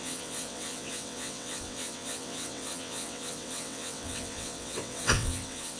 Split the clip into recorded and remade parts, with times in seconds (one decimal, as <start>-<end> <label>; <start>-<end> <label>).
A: 0.0-5.8 remade